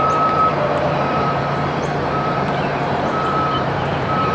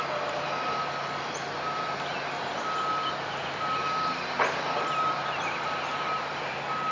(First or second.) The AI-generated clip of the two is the first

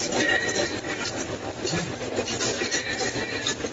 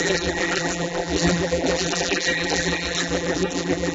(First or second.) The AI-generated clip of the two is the second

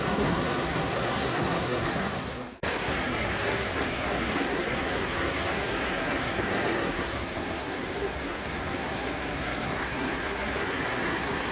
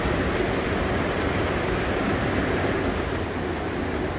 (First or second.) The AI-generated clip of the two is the first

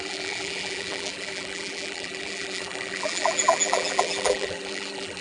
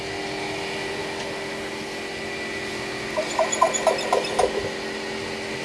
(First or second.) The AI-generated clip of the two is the first